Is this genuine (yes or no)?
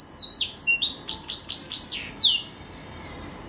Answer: no